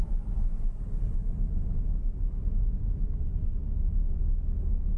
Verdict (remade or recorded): recorded